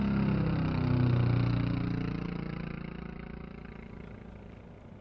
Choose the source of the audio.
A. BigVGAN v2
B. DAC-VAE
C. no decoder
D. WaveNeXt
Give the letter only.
C